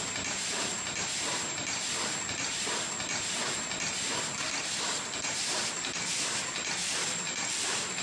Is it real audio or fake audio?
real